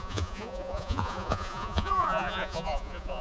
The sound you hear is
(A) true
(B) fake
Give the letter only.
B